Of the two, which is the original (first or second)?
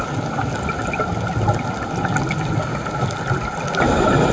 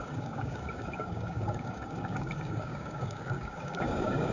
first